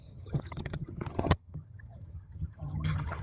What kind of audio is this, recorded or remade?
remade